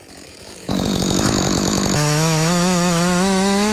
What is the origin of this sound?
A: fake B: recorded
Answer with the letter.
A